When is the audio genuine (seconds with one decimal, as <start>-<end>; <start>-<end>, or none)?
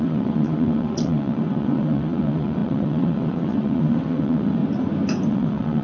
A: 4.6-5.3